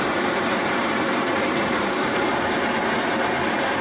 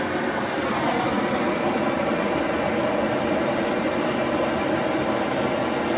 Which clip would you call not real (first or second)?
first